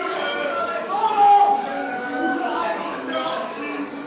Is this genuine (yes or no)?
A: no